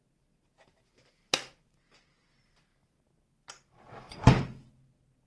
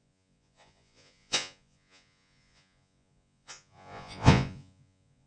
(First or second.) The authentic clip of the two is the first